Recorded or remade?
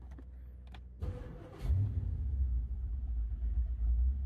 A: recorded